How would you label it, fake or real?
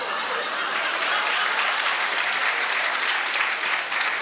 fake